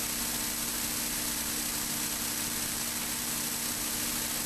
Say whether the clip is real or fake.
real